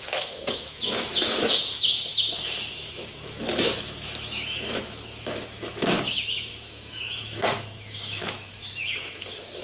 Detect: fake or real fake